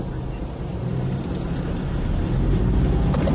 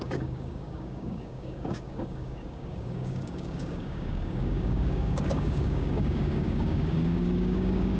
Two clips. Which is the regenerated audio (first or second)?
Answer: second